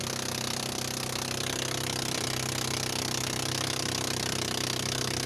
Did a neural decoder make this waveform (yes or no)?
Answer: no